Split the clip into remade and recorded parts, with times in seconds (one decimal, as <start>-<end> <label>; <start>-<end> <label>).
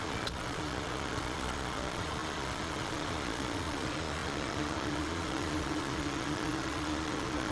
0.0-7.5 remade